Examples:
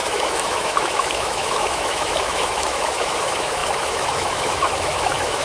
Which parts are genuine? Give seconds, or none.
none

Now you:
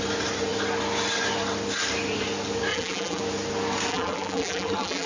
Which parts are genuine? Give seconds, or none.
0.0-2.7; 3.2-3.9

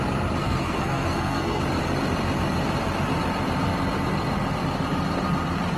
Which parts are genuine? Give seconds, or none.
0.0-0.4; 1.6-5.8

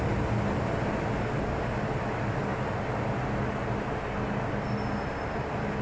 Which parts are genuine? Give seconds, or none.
0.0-5.8

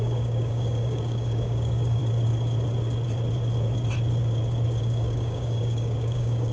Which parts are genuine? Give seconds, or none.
2.0-4.8